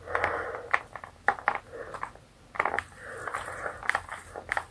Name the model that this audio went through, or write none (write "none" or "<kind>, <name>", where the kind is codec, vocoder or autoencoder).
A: none